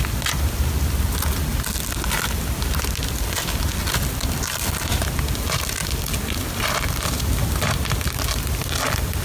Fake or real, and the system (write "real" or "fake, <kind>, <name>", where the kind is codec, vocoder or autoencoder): real